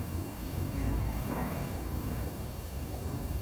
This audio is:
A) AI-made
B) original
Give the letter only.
A